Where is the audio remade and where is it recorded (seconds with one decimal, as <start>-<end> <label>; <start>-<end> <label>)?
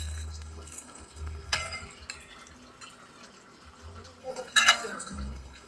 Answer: 0.0-1.6 remade; 1.6-4.2 recorded; 4.2-5.7 remade